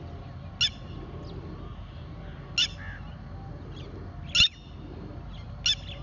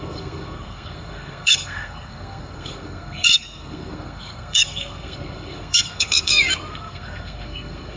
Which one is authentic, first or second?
first